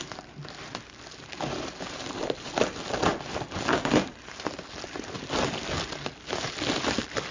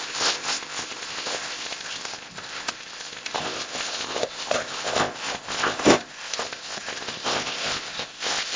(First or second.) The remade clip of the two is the second